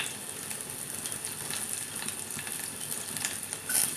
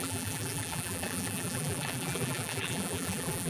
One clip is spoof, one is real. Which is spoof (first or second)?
second